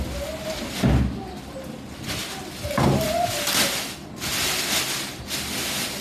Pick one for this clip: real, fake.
real